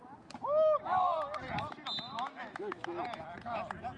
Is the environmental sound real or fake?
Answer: real